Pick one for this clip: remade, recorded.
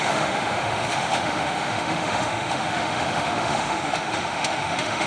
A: remade